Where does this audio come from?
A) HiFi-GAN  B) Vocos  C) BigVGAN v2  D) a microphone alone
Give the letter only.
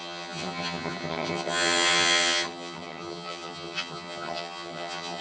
A